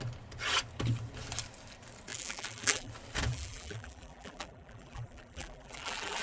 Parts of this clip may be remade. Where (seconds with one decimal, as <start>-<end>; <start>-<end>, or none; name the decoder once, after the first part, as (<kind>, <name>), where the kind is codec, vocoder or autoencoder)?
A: 2.1-2.9 (vocoder, BigVGAN v2); 3.3-6.2